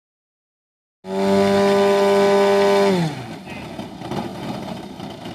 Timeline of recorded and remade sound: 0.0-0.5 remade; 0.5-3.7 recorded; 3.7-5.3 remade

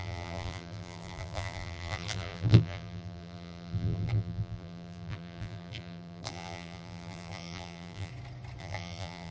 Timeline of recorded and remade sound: 0.0-8.1 remade; 8.1-8.6 recorded; 8.6-9.3 remade